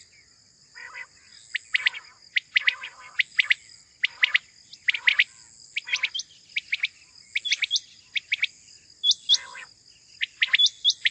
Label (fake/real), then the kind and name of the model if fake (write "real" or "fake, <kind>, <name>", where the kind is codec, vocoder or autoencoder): real